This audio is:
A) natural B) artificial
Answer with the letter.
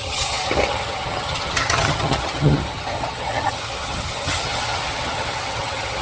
B